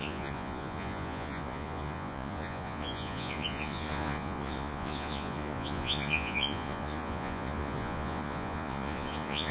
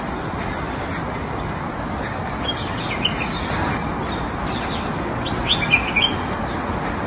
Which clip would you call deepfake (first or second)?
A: first